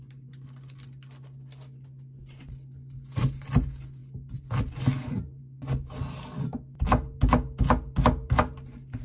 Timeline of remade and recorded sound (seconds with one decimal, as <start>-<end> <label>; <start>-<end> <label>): 0.0-9.0 recorded

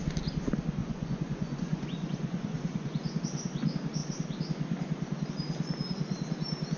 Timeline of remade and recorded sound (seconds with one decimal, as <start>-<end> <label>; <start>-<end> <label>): 0.0-0.8 recorded; 0.8-3.2 remade; 3.2-6.8 recorded

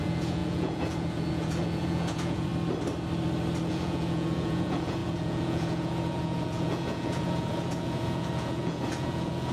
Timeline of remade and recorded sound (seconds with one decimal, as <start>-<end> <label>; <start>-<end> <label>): 0.0-2.5 remade; 2.5-3.7 recorded; 3.7-9.5 remade

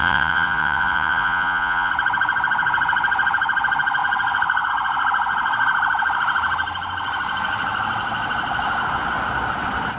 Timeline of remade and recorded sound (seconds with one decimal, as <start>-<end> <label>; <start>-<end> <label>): 0.0-1.9 remade; 1.9-10.0 recorded

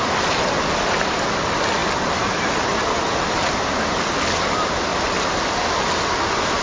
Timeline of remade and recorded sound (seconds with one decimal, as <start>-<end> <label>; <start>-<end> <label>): 0.0-6.6 recorded